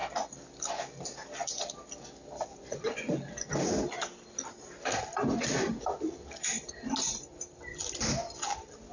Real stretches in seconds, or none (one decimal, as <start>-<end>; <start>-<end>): 0.0-2.5; 3.1-8.9